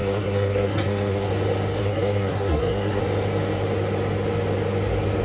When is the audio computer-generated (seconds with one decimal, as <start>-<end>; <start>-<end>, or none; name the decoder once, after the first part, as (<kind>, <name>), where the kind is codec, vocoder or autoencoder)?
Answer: 0.0-1.3 (codec, SNAC); 1.8-3.0